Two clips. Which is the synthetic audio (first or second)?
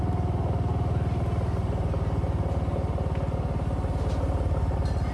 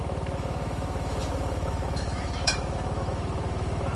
second